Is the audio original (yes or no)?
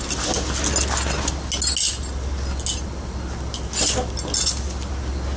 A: yes